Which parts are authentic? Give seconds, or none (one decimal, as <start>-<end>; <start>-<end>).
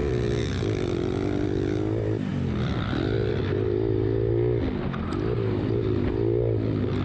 0.5-2.3; 3.3-7.0